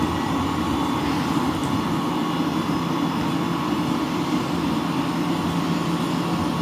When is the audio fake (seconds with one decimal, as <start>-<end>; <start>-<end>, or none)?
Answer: none